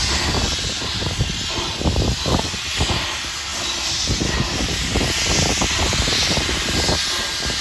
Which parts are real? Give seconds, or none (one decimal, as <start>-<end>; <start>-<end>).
0.0-7.6